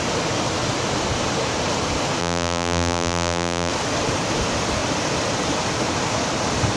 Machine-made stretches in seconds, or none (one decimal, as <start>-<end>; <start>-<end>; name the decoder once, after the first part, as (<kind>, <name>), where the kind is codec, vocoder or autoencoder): 2.2-3.7 (vocoder, BigVGAN v2)